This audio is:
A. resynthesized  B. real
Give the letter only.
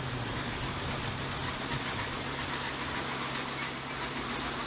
B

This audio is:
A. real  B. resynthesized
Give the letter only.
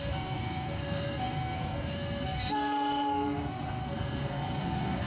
B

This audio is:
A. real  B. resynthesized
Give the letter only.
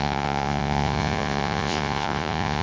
B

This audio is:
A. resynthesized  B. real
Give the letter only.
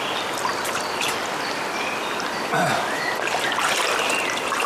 B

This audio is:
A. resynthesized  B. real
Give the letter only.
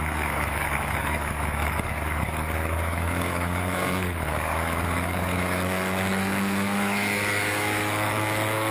A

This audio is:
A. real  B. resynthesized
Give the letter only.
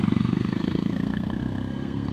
B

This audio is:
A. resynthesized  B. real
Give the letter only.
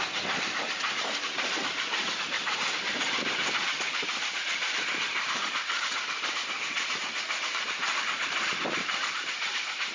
A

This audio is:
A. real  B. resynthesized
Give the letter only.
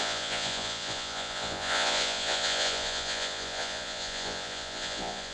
B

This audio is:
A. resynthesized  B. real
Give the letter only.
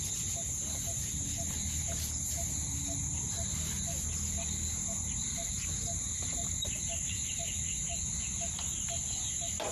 B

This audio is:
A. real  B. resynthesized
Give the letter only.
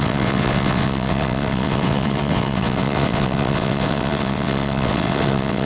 B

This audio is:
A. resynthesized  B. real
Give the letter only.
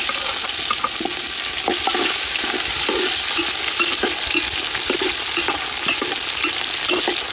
B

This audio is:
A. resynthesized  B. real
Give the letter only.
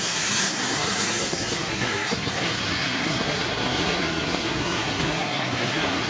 A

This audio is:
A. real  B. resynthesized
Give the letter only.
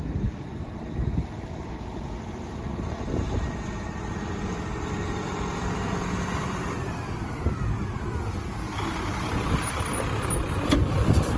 B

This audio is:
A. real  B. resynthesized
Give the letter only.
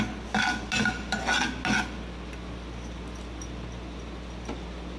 A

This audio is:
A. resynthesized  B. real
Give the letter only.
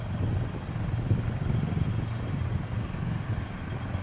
B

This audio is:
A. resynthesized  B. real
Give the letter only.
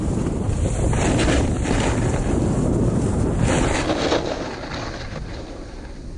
B